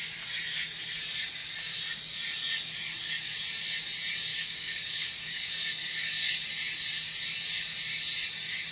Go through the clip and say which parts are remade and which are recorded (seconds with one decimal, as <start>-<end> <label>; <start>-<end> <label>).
0.0-4.3 recorded; 4.3-5.5 remade; 5.5-8.7 recorded